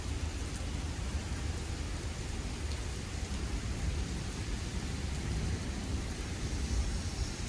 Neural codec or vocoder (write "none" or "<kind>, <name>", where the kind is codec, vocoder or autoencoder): vocoder, BigVGAN v2